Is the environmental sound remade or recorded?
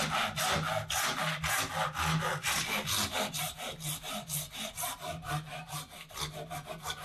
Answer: recorded